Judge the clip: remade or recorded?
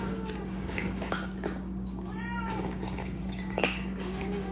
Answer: remade